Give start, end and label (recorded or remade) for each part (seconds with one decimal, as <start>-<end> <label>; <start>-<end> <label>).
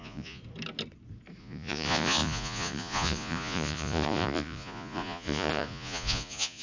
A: 0.0-0.4 remade; 0.4-1.4 recorded; 1.4-6.6 remade